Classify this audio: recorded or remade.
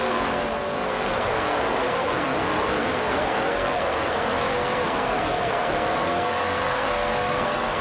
remade